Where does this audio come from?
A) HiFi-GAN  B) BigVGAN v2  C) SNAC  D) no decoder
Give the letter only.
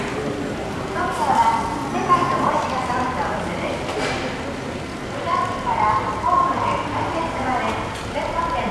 D